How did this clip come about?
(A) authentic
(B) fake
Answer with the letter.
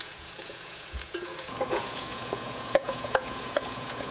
B